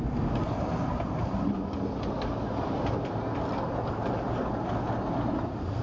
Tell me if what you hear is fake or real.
real